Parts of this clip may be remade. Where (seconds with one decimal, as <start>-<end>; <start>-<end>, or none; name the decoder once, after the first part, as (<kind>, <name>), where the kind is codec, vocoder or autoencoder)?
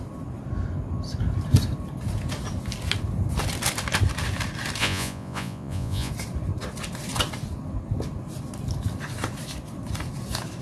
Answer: 4.8-6.1 (vocoder, Vocos)